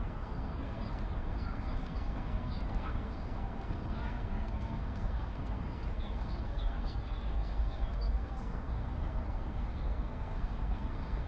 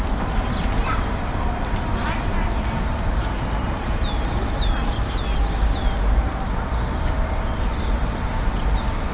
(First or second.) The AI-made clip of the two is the first